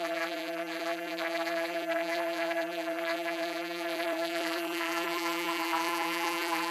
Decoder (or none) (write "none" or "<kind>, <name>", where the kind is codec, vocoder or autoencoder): vocoder, BigVGAN v2